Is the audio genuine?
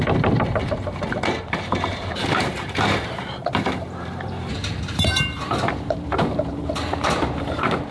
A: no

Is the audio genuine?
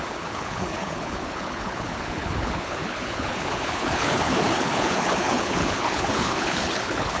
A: no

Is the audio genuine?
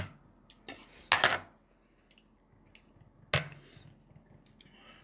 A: yes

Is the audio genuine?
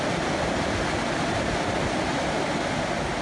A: yes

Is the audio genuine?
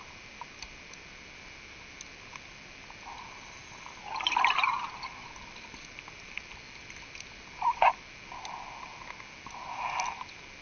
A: yes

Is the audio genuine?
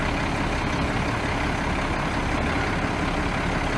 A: yes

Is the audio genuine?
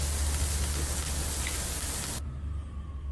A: yes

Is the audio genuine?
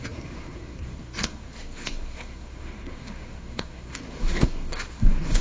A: no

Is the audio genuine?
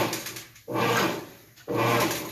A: yes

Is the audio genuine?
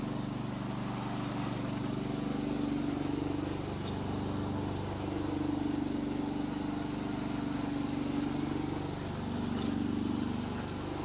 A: yes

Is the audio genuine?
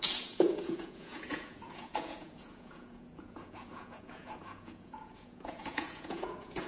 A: no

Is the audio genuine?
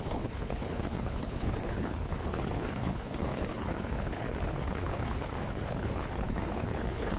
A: no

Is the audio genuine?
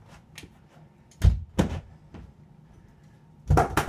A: yes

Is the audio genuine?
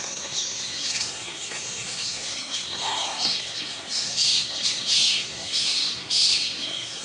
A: no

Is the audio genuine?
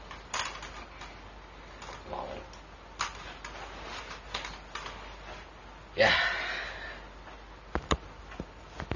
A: yes